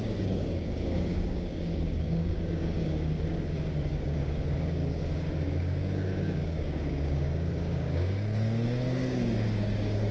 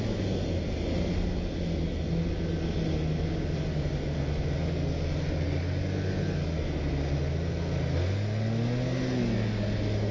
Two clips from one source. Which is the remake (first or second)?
first